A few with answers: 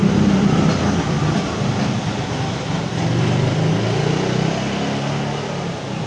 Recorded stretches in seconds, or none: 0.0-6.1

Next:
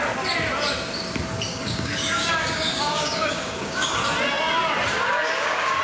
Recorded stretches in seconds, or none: 0.0-1.5; 4.0-4.9

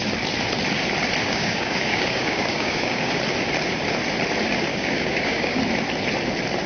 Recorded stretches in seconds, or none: 0.0-1.2; 3.2-4.7; 5.6-6.7

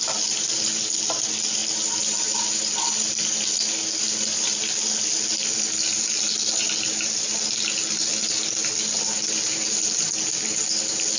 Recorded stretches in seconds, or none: 0.0-11.2

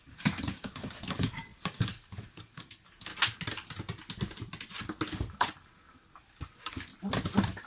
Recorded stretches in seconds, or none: 3.1-5.1; 6.9-7.7

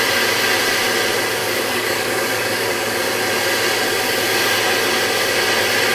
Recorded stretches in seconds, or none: 0.0-1.4; 3.1-5.9